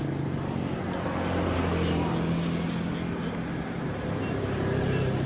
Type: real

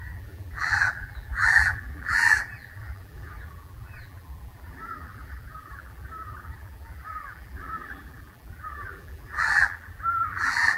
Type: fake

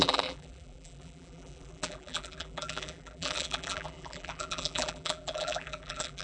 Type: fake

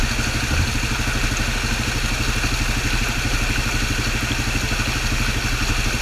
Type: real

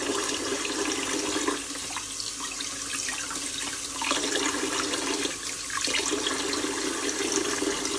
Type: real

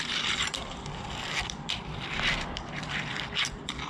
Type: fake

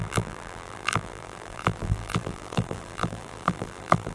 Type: fake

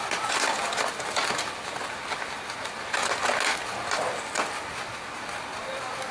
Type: real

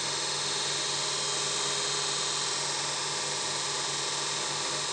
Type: real